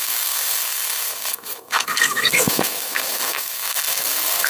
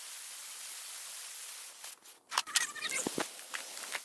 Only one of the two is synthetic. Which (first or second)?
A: first